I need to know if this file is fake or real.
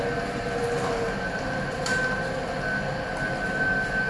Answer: real